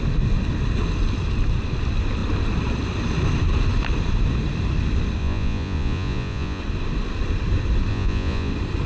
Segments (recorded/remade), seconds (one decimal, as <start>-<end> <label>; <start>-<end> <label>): 0.0-5.2 recorded; 5.2-6.6 remade; 6.6-7.9 recorded; 7.9-8.5 remade; 8.5-8.9 recorded